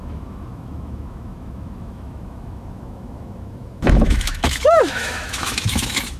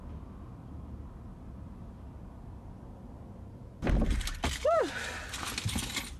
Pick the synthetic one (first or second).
first